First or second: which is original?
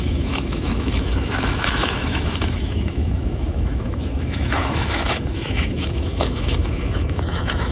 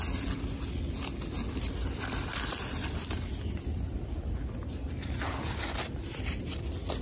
second